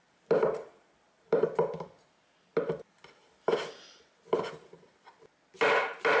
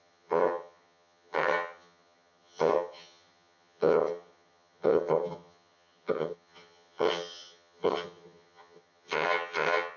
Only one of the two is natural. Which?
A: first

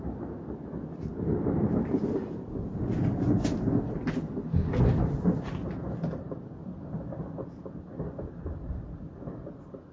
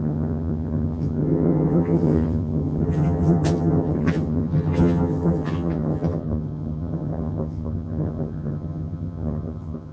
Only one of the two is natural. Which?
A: first